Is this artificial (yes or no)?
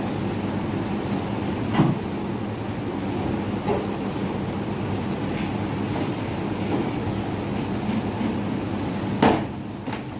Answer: no